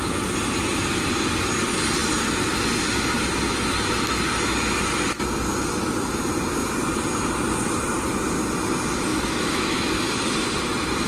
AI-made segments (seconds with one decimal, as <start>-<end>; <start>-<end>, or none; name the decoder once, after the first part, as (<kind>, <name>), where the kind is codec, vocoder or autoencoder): 9.1-9.9 (autoencoder, DAC-VAE)